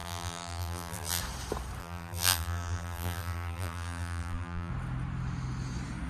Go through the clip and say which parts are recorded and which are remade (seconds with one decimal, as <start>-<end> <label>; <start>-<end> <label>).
0.0-1.2 remade; 1.2-1.8 recorded; 1.8-4.7 remade; 4.7-6.1 recorded

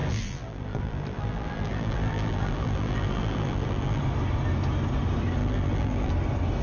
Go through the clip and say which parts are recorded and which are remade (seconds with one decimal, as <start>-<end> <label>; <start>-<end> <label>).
0.0-4.0 remade; 4.0-5.4 recorded; 5.4-6.1 remade; 6.1-6.6 recorded

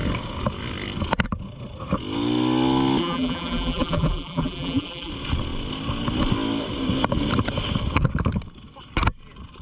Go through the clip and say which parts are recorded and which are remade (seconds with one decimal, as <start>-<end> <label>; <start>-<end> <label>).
0.0-3.0 recorded; 3.0-5.1 remade; 5.1-9.6 recorded

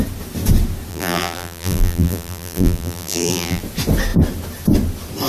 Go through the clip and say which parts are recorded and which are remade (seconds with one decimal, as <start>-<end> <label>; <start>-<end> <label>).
0.0-0.9 recorded; 0.9-3.6 remade; 3.6-5.3 recorded